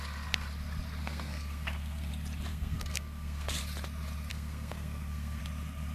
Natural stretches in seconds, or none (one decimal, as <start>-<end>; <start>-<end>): 0.0-1.0; 2.1-2.5; 3.6-4.3; 5.4-5.9